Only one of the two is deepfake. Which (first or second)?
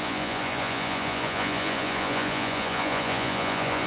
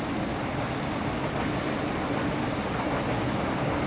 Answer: first